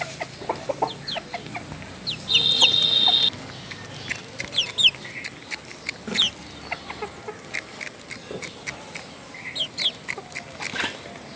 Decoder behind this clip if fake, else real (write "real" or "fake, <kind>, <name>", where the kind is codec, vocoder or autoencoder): real